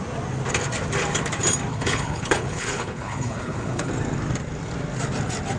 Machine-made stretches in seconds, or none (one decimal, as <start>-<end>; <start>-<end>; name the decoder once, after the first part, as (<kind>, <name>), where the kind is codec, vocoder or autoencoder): 1.7-3.9 (codec, HILCodec)